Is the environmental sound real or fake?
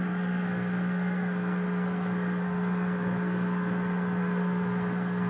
fake